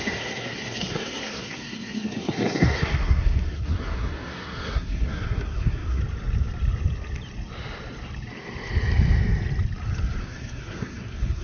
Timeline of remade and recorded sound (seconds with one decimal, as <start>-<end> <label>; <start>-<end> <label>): 0.0-6.0 remade; 6.0-10.2 recorded; 10.2-11.4 remade